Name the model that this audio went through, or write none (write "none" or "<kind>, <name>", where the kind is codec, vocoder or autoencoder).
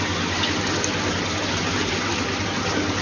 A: none